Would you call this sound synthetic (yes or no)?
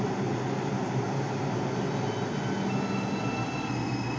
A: no